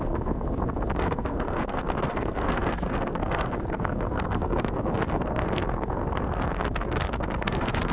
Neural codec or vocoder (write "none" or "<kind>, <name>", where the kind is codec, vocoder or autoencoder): codec, SNAC